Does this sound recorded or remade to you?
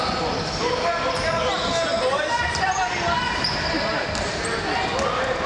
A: recorded